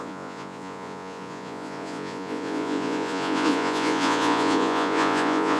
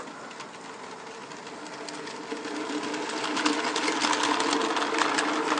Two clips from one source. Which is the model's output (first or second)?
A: first